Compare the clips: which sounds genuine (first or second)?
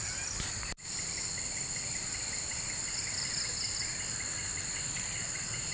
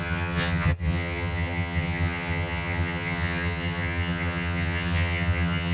first